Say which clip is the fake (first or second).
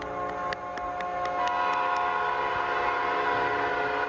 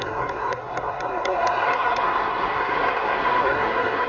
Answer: second